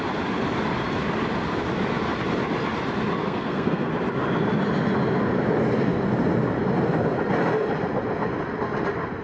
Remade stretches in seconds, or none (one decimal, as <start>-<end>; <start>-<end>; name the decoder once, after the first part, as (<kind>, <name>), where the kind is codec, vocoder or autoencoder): 3.2-3.9 (codec, SNAC)